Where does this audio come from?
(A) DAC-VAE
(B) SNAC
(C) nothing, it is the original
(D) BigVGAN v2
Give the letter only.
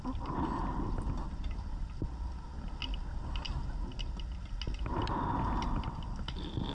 C